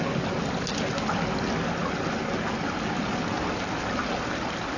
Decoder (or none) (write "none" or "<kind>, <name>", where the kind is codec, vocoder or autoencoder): none